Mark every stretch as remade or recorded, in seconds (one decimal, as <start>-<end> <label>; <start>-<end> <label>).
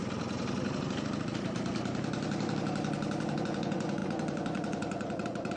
0.0-3.4 recorded; 3.4-5.6 remade